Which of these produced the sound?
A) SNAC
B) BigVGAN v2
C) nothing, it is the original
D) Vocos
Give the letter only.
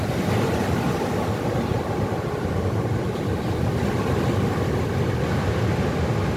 C